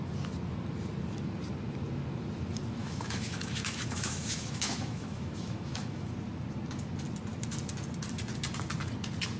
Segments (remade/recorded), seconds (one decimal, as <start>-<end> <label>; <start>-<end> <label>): 0.0-2.8 recorded; 2.8-6.1 remade; 6.1-9.4 recorded